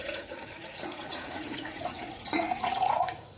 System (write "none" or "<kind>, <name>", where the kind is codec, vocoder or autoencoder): vocoder, Vocos